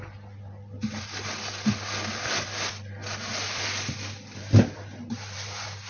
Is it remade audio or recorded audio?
recorded